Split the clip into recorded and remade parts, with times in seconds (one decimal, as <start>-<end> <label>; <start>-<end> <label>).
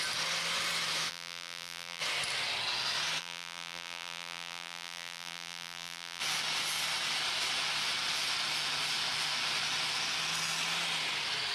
0.0-1.1 recorded; 1.1-2.0 remade; 2.0-3.2 recorded; 3.2-6.2 remade; 6.2-11.5 recorded